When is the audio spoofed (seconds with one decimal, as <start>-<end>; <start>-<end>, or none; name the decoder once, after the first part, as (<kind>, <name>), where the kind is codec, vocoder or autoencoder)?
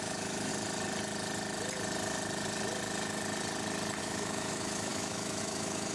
0.0-0.5 (autoencoder, DAC-VAE); 4.0-5.9